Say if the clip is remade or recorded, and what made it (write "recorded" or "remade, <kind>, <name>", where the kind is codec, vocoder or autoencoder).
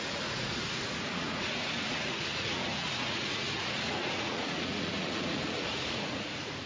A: remade, vocoder, Vocos